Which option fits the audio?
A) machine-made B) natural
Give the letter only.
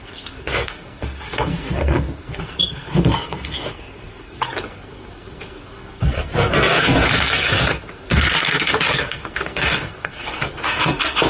A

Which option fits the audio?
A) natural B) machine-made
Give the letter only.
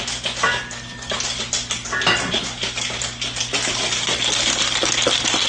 A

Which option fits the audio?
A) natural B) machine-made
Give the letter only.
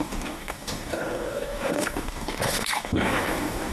B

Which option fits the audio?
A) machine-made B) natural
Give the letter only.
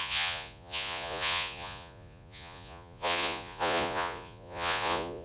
A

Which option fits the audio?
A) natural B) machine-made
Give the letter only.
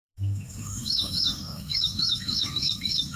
B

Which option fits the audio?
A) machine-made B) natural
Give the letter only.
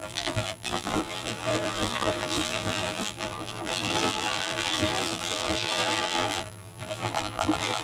A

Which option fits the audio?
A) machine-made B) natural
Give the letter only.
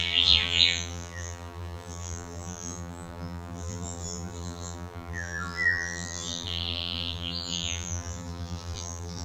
A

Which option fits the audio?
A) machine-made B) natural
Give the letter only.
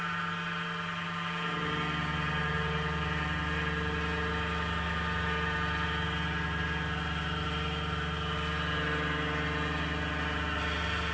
B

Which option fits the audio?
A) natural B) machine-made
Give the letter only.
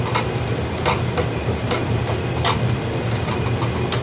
A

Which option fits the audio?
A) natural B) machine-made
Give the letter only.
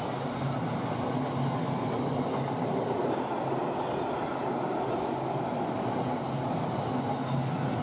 A